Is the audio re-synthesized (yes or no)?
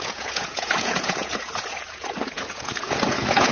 yes